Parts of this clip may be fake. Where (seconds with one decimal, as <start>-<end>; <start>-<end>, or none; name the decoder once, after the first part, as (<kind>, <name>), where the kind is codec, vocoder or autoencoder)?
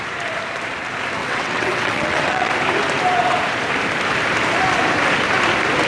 1.2-2.5 (vocoder, WaveNeXt)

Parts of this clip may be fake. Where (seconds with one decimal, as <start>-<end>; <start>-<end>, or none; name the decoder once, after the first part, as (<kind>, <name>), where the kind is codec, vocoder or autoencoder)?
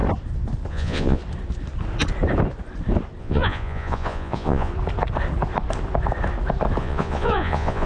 0.7-1.2 (vocoder, Vocos); 3.2-4.7; 6.8-7.9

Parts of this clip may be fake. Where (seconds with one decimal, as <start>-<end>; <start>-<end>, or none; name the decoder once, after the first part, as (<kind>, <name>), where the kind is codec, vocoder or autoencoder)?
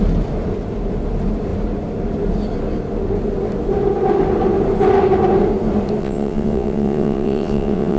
6.0-8.0 (vocoder, WaveNeXt)